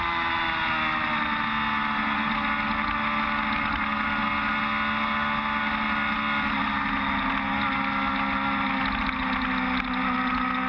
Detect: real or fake real